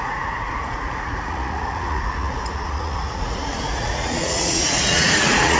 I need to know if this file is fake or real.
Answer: fake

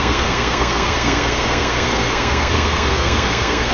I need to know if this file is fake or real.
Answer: fake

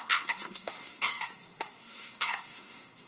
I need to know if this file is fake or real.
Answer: fake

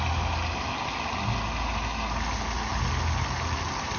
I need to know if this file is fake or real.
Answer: real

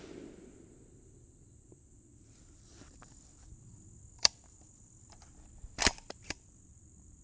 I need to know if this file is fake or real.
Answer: fake